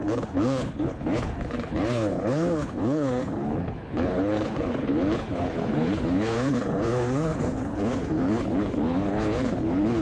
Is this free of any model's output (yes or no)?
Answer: no